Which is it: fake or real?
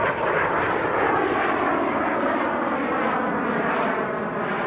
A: real